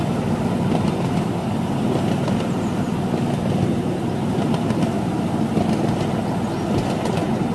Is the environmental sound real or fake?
real